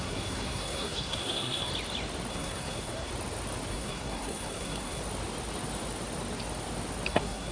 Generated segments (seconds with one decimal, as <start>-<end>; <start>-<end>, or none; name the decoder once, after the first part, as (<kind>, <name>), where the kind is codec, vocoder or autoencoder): 0.0-1.7 (codec, SNAC); 2.3-3.1; 3.7-5.0; 7.1-7.5